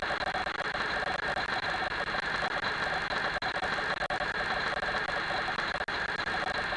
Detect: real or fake real